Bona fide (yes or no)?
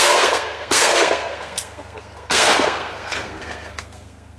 no